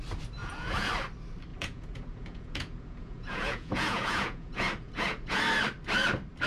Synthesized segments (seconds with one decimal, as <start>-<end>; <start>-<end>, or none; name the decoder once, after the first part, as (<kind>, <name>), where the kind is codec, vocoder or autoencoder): 0.4-0.9 (vocoder, Vocos); 1.5-5.4